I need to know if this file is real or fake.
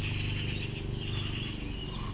real